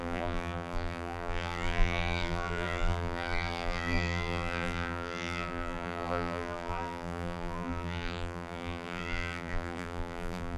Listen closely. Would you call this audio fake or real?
fake